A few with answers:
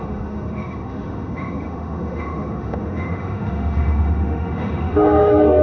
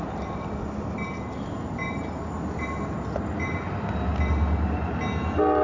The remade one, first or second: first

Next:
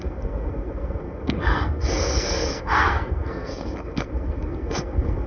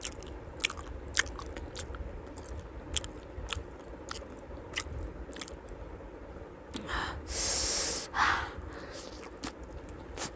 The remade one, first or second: first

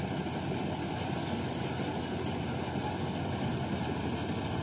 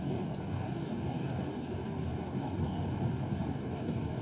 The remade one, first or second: second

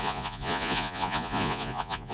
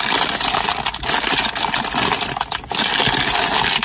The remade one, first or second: first